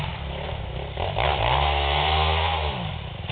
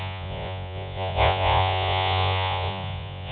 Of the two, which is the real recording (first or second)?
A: first